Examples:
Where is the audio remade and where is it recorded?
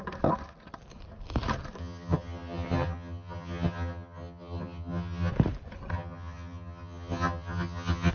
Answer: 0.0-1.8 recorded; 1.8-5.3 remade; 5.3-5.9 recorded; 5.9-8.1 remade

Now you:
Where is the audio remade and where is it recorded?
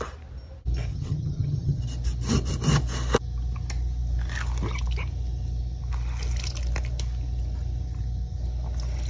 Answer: 0.0-0.9 recorded; 0.9-1.8 remade; 1.8-9.1 recorded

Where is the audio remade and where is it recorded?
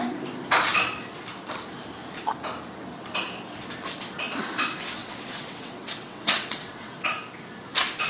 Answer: 0.0-5.0 recorded; 5.0-6.9 remade; 6.9-8.1 recorded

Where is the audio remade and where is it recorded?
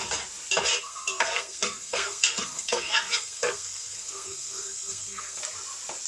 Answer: 0.0-0.8 recorded; 0.8-5.4 remade; 5.4-6.1 recorded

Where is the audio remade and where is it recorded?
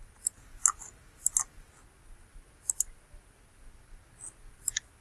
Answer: 0.0-5.0 recorded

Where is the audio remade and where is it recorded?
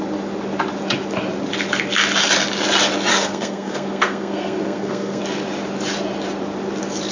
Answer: 0.0-3.1 recorded; 3.1-5.2 remade; 5.2-7.1 recorded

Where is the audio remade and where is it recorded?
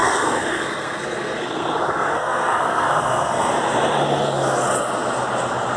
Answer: 0.0-3.5 remade; 3.5-5.8 recorded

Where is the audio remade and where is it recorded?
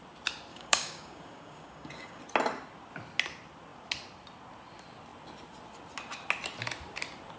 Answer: 0.0-0.5 recorded; 0.5-2.2 remade; 2.2-7.4 recorded